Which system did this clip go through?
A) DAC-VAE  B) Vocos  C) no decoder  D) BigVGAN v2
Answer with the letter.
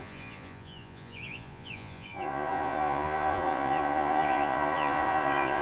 B